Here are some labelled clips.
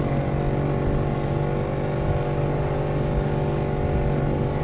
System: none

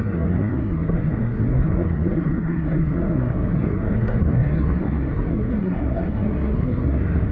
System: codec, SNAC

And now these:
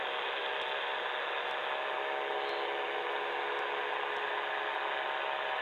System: none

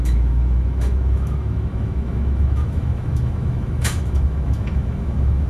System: autoencoder, DAC-VAE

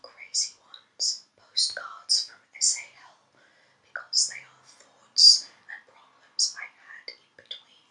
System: none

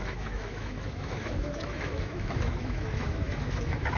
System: autoencoder, DAC-VAE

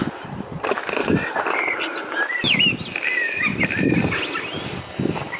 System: none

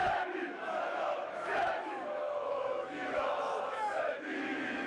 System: autoencoder, DAC-VAE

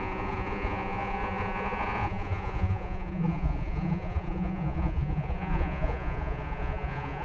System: vocoder, Vocos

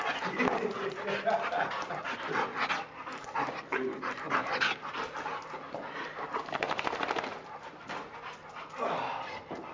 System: none